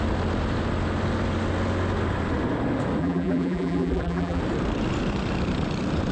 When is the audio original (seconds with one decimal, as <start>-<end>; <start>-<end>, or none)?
0.0-3.0; 4.4-6.1